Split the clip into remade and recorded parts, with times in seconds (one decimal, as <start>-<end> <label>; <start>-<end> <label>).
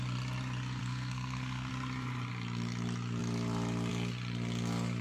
0.0-0.8 recorded; 0.8-1.7 remade; 1.7-5.0 recorded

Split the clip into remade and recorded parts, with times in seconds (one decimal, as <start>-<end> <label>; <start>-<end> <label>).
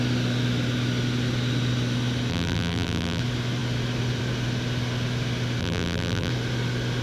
0.0-2.3 recorded; 2.3-3.2 remade; 3.2-5.6 recorded; 5.6-6.3 remade; 6.3-7.0 recorded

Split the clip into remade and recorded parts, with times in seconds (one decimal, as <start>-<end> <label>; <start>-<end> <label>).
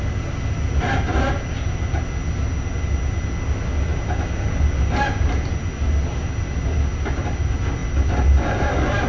0.0-9.1 recorded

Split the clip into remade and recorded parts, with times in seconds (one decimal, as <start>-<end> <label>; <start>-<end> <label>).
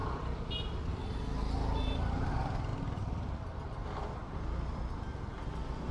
0.0-0.5 remade; 0.5-5.9 recorded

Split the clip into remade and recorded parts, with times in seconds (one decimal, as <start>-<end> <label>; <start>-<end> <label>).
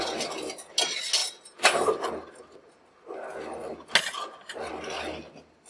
0.0-5.7 recorded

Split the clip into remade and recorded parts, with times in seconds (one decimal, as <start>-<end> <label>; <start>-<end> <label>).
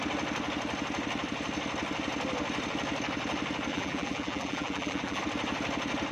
0.0-3.7 recorded; 3.7-5.2 remade; 5.2-6.1 recorded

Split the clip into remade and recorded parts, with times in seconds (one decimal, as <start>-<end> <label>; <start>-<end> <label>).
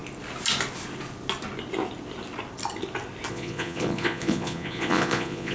0.0-3.3 recorded; 3.3-5.5 remade